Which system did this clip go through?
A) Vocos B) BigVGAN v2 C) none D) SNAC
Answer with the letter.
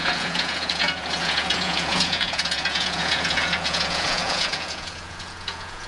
A